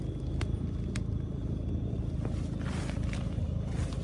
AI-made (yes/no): no